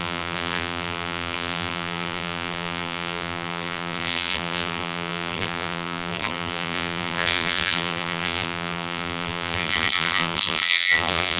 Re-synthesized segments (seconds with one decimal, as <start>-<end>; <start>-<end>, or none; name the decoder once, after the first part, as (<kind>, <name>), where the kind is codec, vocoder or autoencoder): 0.0-11.4 (vocoder, BigVGAN v2)